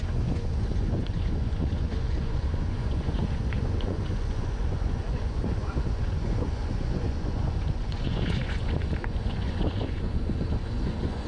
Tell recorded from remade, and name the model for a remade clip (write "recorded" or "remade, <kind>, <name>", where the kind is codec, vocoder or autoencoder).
remade, vocoder, Vocos